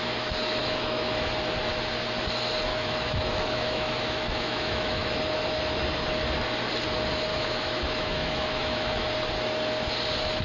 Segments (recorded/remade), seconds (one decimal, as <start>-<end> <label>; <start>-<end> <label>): 0.0-0.6 recorded; 0.6-1.3 remade; 1.3-2.7 recorded; 2.7-5.1 remade; 5.1-7.3 recorded; 7.3-9.1 remade; 9.1-10.4 recorded